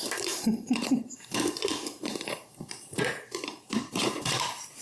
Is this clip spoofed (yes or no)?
yes